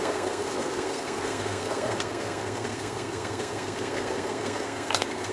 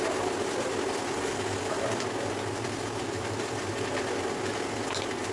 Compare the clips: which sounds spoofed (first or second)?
first